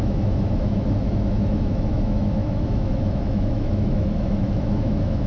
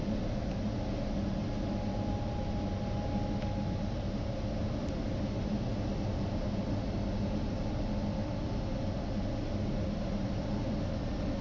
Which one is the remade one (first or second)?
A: first